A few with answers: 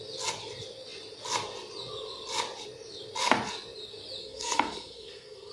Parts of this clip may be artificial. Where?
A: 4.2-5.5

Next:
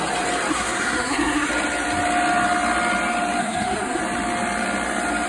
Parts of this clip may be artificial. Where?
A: 0.5-1.5; 3.4-4.0